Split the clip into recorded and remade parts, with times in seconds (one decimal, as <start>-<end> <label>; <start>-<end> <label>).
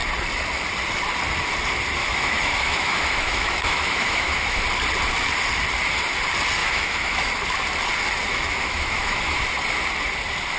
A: 0.0-2.0 recorded; 2.0-4.6 remade; 4.6-6.6 recorded; 6.6-7.3 remade; 7.3-8.3 recorded; 8.3-9.4 remade; 9.4-10.6 recorded